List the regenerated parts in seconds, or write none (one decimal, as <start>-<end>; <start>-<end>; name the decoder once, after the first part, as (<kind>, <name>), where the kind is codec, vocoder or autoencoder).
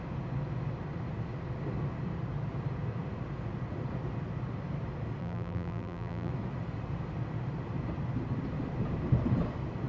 5.2-6.3 (vocoder, BigVGAN v2)